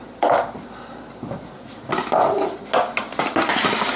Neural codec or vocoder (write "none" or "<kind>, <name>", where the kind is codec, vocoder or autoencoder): none